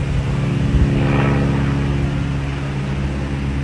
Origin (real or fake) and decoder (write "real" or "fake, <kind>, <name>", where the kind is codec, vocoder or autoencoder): real